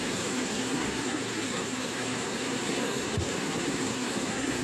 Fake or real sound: fake